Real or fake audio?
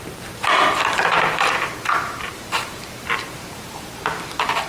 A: fake